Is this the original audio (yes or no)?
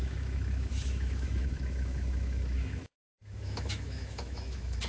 no